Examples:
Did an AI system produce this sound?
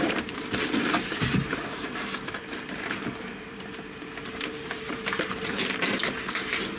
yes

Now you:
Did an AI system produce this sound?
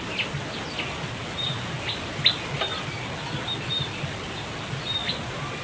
no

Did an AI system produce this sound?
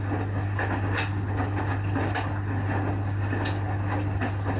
no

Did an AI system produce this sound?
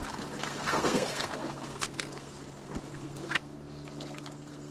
yes